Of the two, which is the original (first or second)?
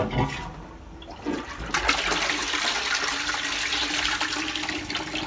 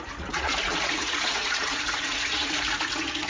first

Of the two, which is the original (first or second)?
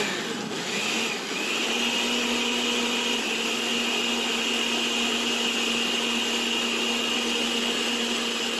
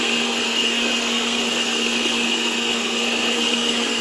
first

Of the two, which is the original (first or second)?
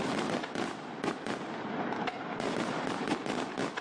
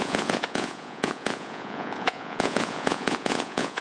first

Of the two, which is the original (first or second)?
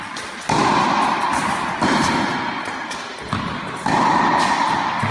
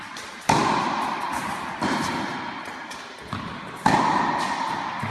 first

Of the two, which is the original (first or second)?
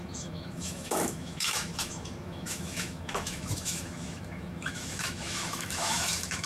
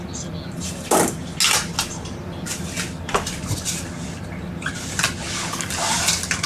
second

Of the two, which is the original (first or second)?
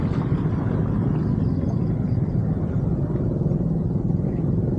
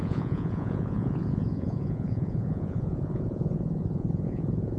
first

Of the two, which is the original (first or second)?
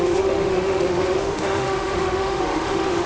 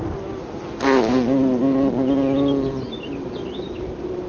second